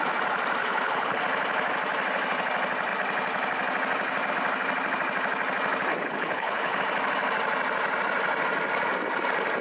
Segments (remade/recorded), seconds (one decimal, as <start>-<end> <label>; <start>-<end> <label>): 0.0-0.6 recorded; 0.6-1.2 remade; 1.2-5.9 recorded; 5.9-6.8 remade; 6.8-9.6 recorded